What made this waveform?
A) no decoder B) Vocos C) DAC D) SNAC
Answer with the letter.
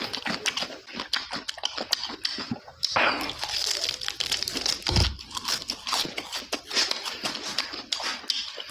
A